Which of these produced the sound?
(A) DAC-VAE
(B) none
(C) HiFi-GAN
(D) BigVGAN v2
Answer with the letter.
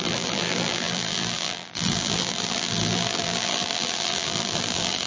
D